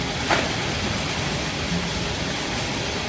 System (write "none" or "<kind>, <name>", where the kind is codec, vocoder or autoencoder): none